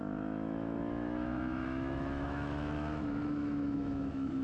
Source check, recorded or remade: remade